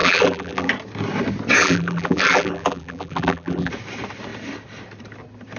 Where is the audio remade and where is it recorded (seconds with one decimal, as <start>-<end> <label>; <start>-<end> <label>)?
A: 0.0-0.7 remade; 0.7-1.6 recorded; 1.6-3.7 remade; 3.7-5.6 recorded